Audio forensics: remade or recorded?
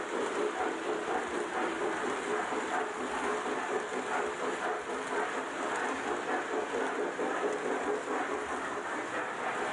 recorded